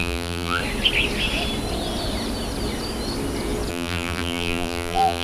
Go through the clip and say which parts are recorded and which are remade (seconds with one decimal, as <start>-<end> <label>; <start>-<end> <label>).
0.0-0.6 remade; 0.6-3.7 recorded; 3.7-5.2 remade